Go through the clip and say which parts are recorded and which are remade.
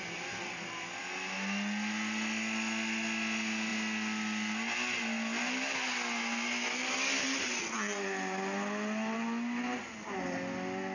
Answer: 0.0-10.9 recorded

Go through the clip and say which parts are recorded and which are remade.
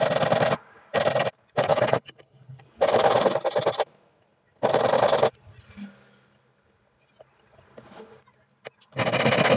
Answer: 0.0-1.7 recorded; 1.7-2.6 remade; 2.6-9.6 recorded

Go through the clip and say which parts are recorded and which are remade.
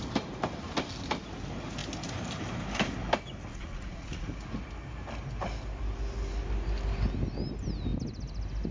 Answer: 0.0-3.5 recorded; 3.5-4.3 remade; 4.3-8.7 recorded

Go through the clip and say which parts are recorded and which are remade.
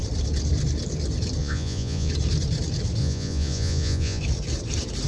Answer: 0.0-1.4 recorded; 1.4-2.1 remade; 2.1-3.0 recorded; 3.0-4.2 remade; 4.2-5.1 recorded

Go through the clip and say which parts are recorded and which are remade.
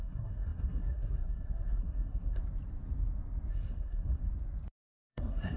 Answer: 0.0-2.4 remade; 2.4-3.5 recorded; 3.5-4.2 remade; 4.2-4.7 recorded; 4.7-5.6 remade